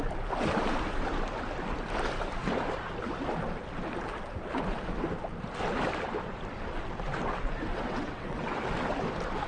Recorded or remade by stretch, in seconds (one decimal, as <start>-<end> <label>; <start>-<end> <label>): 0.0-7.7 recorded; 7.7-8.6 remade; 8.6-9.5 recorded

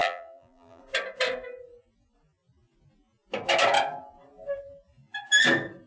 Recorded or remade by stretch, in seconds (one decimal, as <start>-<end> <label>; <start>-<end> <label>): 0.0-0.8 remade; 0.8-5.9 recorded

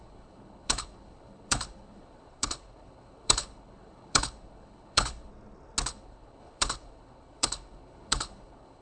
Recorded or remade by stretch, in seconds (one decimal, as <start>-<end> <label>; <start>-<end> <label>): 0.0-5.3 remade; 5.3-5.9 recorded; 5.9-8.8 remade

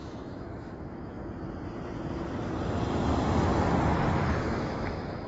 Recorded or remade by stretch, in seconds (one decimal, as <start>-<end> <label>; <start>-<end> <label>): 0.0-1.2 remade; 1.2-4.4 recorded; 4.4-5.3 remade

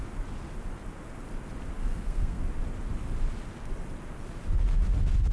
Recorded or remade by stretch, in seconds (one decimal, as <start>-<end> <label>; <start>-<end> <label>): 0.0-1.8 recorded; 1.8-2.4 remade; 2.4-5.3 recorded

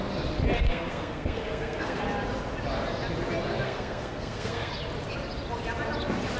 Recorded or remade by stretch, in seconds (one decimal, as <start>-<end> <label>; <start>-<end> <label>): 0.0-0.7 recorded; 0.7-2.0 remade; 2.0-3.5 recorded; 3.5-4.7 remade; 4.7-6.4 recorded

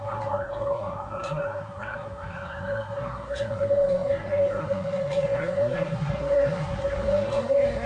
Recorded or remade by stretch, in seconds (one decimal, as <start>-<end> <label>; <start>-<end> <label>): 0.0-7.9 remade

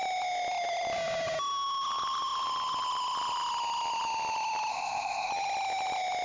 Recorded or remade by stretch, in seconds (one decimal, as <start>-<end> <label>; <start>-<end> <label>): 0.0-4.7 recorded; 4.7-5.3 remade; 5.3-6.2 recorded